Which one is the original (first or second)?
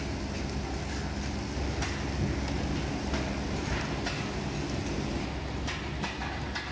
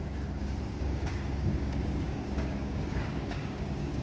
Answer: first